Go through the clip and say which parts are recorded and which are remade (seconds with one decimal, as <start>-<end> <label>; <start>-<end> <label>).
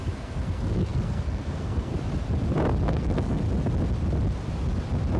0.0-1.9 remade; 1.9-2.9 recorded; 2.9-3.4 remade; 3.4-5.2 recorded